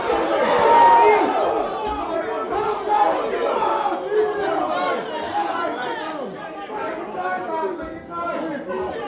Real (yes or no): yes